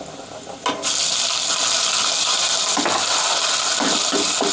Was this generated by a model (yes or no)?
no